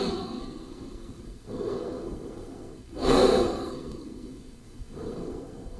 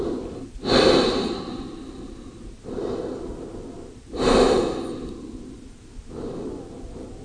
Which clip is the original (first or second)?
second